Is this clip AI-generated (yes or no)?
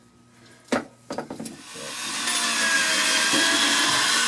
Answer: no